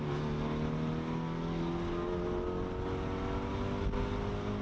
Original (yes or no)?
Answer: yes